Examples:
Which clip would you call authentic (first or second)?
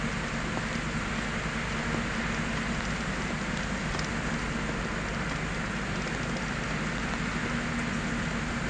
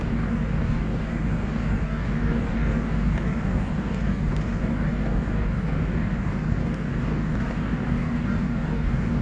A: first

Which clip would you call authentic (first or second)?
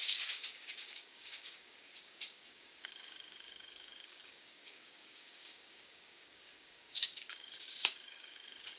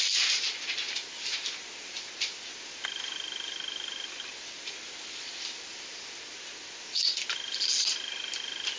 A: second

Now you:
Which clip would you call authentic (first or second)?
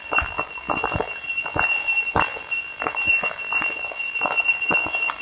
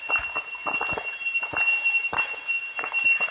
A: second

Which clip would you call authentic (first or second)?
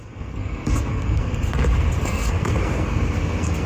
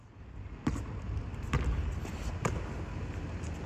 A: second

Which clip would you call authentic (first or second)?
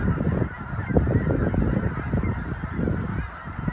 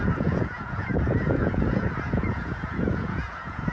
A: first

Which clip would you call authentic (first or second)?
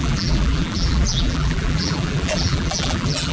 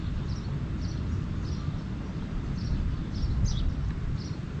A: second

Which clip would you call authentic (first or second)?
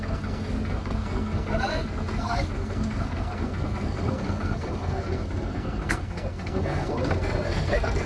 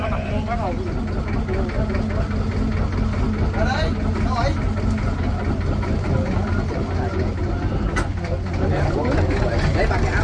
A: second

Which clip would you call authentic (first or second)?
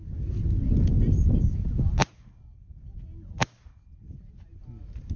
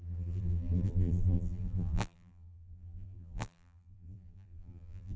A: first